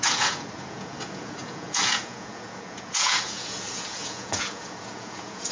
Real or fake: fake